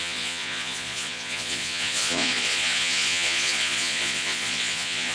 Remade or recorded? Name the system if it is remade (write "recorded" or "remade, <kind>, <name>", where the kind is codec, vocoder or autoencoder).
remade, vocoder, Vocos